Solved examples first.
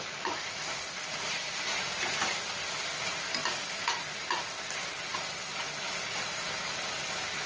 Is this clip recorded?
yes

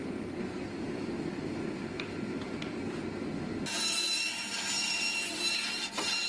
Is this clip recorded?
yes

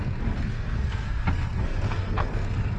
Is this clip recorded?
no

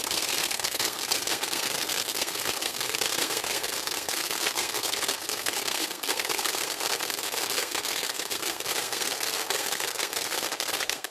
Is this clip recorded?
no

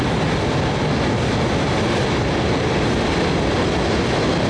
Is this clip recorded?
yes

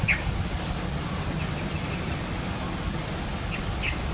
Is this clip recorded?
yes